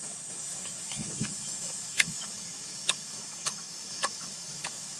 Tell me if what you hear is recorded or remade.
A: remade